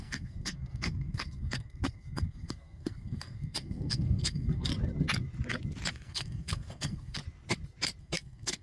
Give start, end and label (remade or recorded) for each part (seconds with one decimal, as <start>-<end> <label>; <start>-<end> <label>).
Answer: 0.0-4.7 remade; 4.7-5.9 recorded; 5.9-7.2 remade; 7.2-8.0 recorded; 8.0-8.6 remade